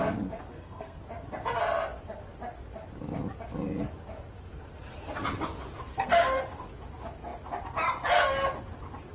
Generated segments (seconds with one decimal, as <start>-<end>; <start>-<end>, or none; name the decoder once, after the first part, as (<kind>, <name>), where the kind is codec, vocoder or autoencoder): 0.5-1.0 (codec, SNAC); 5.9-6.4